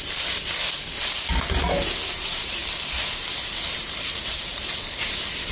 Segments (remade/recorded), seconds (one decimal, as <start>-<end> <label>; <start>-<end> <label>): 0.0-0.6 remade; 0.6-2.1 recorded; 2.1-2.6 remade; 2.6-3.3 recorded; 3.3-5.5 remade